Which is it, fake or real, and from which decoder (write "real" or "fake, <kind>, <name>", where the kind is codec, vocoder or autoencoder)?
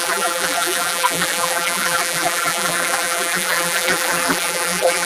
fake, vocoder, BigVGAN v2